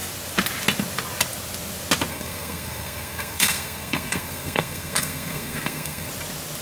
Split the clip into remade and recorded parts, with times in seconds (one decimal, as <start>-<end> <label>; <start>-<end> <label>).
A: 0.0-2.1 recorded; 2.1-6.1 remade; 6.1-6.6 recorded